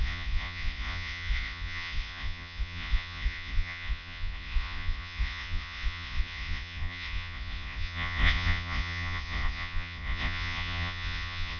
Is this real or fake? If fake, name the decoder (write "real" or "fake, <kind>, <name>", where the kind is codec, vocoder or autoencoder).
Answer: fake, vocoder, Vocos